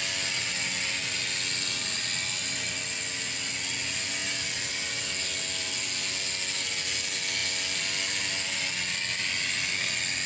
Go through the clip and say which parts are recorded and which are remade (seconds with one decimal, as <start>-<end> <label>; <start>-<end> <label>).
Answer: 0.0-10.3 recorded